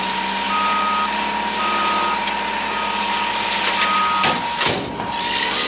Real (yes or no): yes